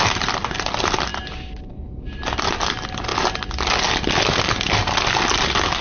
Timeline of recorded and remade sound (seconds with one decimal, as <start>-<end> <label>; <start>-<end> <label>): 0.0-5.8 recorded